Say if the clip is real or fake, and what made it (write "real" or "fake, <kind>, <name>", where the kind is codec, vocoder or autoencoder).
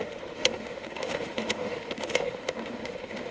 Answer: fake, autoencoder, DAC-VAE